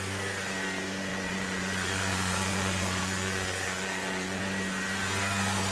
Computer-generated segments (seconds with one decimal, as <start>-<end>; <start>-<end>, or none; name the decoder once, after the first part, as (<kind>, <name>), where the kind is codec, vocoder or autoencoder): 1.1-4.4 (vocoder, Vocos)